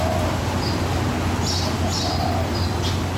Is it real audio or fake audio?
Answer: real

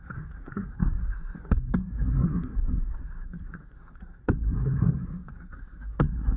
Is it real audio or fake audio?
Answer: fake